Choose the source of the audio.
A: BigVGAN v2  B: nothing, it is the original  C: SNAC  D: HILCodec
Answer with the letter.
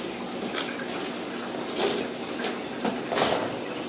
B